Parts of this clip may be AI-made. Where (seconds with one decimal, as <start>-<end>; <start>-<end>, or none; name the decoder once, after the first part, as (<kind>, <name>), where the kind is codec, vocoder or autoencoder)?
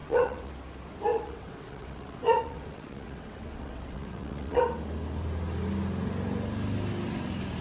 0.0-0.5 (vocoder, WaveNeXt); 1.1-4.6